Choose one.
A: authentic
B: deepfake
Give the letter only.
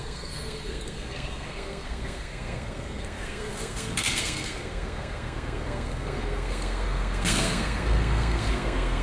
B